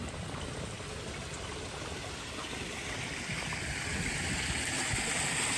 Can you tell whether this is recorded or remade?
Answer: recorded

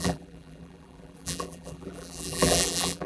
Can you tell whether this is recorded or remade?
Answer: remade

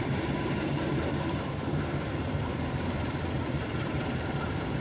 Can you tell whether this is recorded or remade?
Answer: remade